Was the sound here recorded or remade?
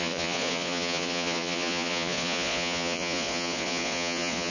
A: remade